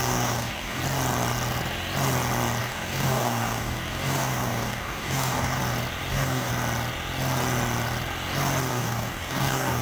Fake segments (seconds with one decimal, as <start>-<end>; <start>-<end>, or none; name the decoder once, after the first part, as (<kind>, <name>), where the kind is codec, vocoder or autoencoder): 0.0-0.8 (codec, DAC); 2.6-5.6; 6.1-6.5; 8.7-9.8